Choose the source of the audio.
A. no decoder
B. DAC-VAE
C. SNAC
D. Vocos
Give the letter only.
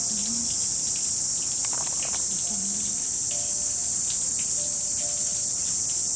A